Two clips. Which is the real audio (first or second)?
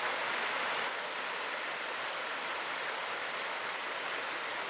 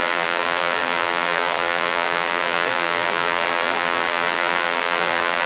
first